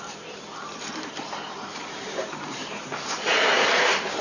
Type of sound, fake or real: fake